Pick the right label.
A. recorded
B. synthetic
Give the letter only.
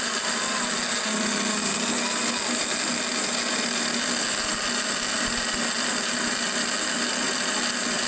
A